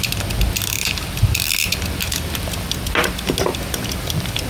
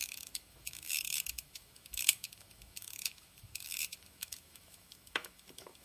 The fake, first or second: second